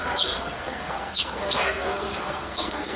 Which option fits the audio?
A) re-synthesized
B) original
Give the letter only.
A